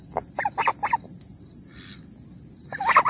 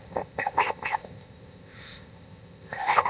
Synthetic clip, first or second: second